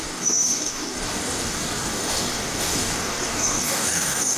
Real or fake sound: fake